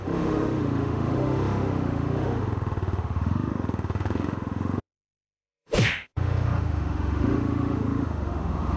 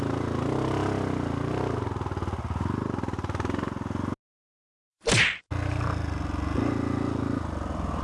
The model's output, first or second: first